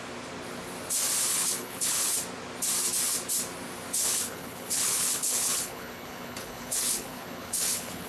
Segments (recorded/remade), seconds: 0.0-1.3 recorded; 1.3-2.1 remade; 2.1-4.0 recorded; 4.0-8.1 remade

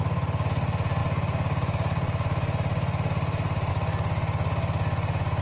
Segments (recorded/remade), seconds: 0.0-5.4 recorded

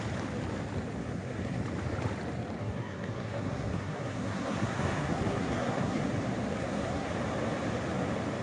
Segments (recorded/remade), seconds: 0.0-1.0 recorded; 1.0-1.6 remade; 1.6-2.6 recorded; 2.6-6.1 remade; 6.1-6.6 recorded; 6.6-7.1 remade; 7.1-8.4 recorded

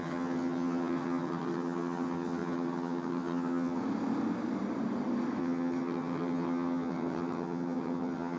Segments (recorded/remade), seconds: 0.0-3.8 remade; 3.8-5.4 recorded; 5.4-8.4 remade